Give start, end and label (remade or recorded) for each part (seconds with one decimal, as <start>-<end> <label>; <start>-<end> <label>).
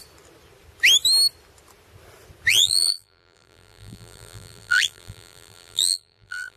0.0-2.5 recorded; 2.5-6.6 remade